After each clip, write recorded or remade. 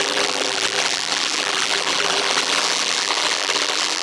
remade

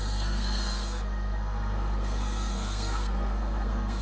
remade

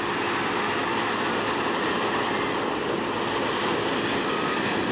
recorded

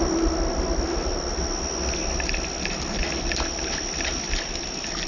recorded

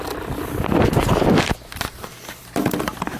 recorded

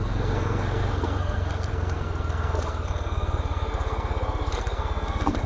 remade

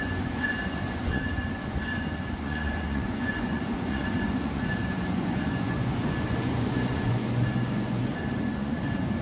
remade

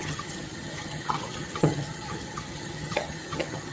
remade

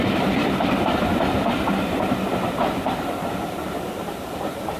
remade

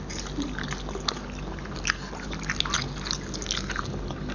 recorded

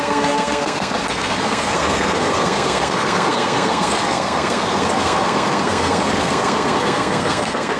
remade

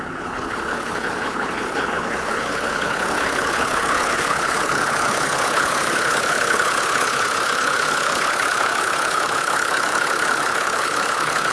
remade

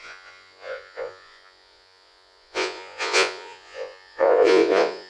remade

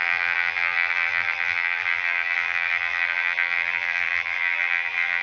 remade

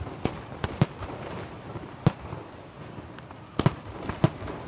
recorded